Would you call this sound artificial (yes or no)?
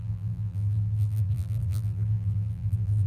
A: yes